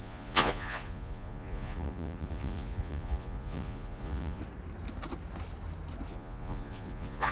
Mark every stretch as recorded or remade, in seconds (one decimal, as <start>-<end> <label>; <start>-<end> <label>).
0.0-4.4 remade; 4.4-6.1 recorded; 6.1-7.3 remade